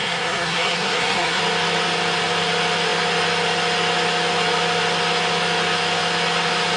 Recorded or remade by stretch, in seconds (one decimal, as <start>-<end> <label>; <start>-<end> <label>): 0.0-1.4 remade; 1.4-6.8 recorded

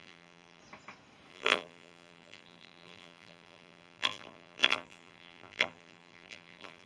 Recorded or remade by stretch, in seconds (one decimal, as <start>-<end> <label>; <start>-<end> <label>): 0.0-0.6 remade; 0.6-1.3 recorded; 1.3-6.9 remade

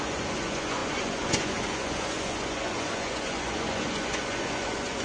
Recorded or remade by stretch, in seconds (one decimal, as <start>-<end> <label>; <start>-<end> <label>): 0.0-5.0 remade

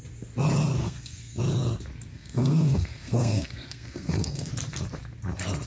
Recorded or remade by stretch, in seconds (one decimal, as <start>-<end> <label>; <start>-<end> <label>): 0.0-0.8 recorded; 0.8-1.4 remade; 1.4-2.1 recorded; 2.1-4.5 remade; 4.5-5.7 recorded

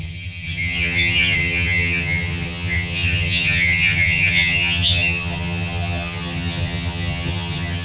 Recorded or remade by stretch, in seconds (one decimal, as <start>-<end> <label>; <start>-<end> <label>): 0.0-7.8 remade

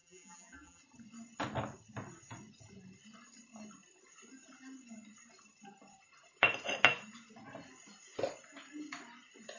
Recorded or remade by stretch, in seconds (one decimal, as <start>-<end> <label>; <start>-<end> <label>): 0.0-0.8 remade; 0.8-9.6 recorded

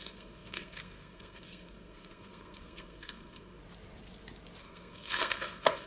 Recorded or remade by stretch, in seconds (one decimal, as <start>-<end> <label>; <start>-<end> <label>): 0.0-3.6 remade; 3.6-4.6 recorded; 4.6-5.9 remade

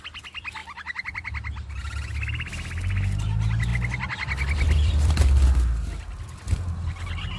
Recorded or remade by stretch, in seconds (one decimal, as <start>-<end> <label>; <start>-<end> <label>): 0.0-3.7 recorded; 3.7-5.2 remade; 5.2-7.4 recorded